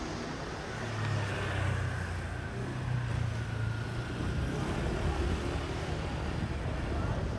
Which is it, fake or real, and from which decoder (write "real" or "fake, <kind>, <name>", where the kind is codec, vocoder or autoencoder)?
real